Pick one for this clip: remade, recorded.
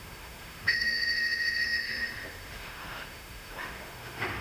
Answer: remade